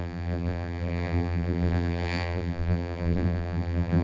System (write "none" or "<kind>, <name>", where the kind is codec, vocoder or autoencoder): vocoder, BigVGAN v2